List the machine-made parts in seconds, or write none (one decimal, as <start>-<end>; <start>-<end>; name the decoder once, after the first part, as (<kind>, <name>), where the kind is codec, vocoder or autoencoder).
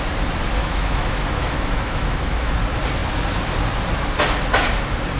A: 0.6-2.5 (autoencoder, DAC-VAE)